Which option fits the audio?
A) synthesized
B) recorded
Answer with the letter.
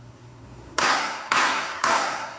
A